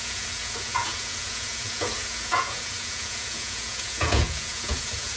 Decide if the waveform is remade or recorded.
remade